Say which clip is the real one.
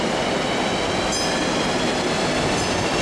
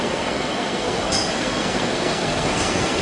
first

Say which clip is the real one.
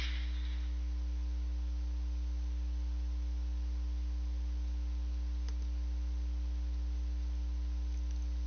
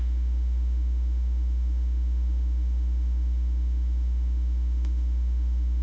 first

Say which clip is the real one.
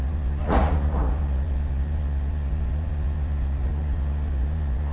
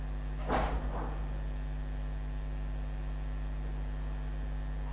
second